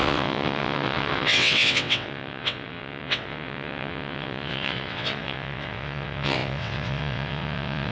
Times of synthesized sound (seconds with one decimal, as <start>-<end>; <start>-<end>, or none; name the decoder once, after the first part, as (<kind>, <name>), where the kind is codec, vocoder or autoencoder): 0.0-7.9 (vocoder, WaveNeXt)